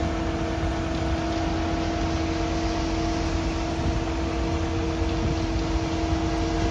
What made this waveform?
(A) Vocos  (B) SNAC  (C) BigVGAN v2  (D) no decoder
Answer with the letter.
D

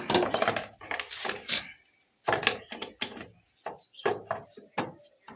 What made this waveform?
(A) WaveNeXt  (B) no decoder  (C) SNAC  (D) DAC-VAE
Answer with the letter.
B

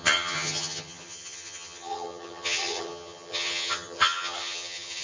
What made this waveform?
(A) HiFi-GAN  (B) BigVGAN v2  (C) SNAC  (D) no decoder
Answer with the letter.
A